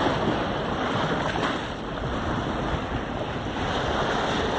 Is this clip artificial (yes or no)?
no